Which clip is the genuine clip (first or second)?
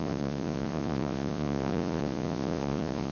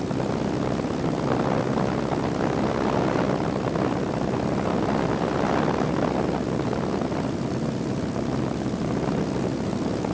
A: second